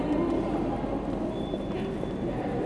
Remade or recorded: recorded